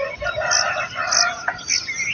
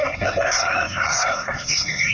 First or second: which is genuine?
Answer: first